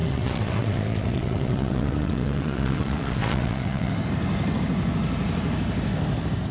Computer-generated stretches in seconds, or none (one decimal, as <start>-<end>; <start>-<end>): 0.0-3.9